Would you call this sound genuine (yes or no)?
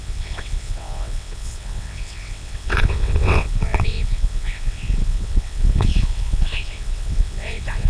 no